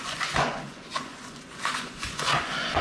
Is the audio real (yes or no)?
no